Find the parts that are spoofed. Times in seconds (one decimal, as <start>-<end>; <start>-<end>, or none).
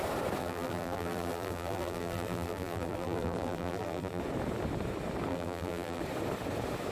0.4-4.2; 5.3-6.0